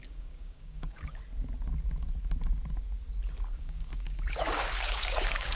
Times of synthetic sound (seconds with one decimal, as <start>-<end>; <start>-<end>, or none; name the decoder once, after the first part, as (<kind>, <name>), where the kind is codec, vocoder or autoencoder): 0.0-1.2 (codec, DAC); 3.5-5.6